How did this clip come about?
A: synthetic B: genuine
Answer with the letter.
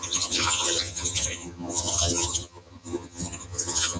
A